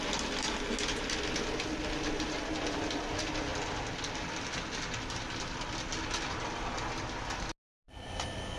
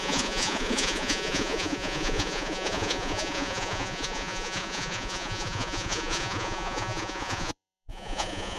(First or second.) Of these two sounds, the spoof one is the second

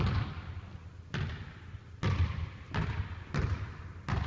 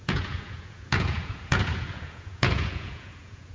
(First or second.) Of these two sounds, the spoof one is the second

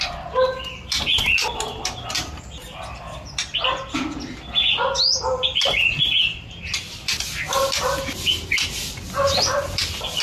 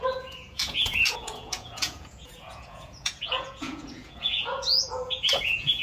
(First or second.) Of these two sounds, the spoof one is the second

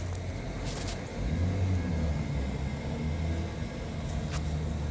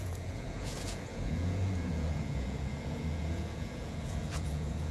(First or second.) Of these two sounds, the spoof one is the second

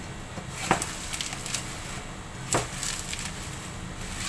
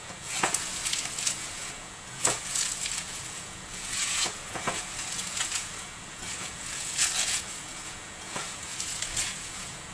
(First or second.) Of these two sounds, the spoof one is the second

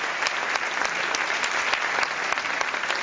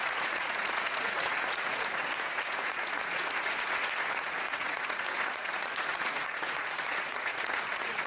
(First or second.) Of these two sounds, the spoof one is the second